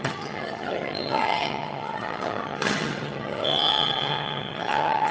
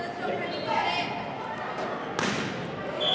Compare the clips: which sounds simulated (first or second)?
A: first